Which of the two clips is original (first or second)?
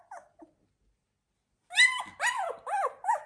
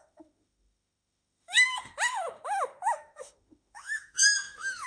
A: first